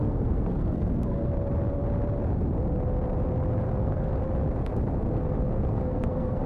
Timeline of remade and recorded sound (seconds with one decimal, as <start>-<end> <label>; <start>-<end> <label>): 0.0-1.3 remade; 1.3-3.7 recorded; 3.7-4.2 remade; 4.2-5.1 recorded; 5.1-6.5 remade